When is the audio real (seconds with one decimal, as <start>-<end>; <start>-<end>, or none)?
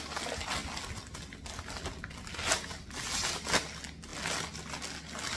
0.0-5.4